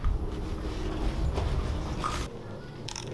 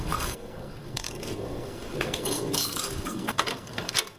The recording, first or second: first